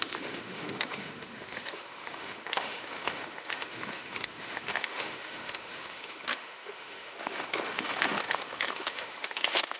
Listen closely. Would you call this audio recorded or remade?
remade